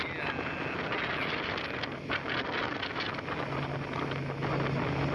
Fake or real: real